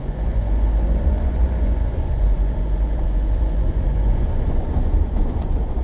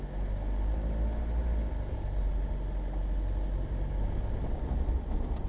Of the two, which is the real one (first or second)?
second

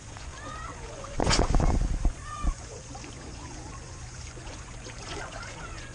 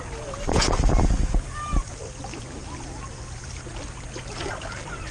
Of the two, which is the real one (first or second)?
second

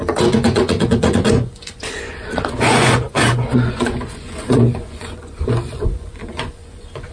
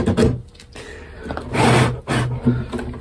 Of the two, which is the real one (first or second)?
second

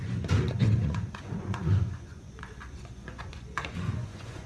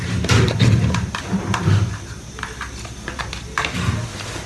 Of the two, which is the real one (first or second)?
second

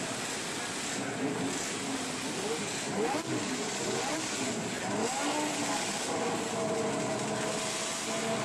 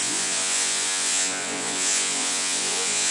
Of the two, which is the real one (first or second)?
first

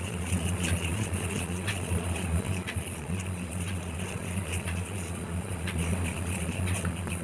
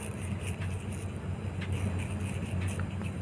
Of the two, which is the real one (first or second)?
second